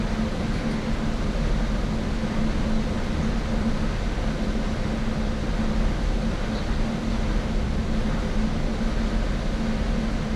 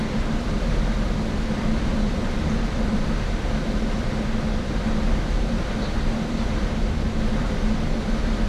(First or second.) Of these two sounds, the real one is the first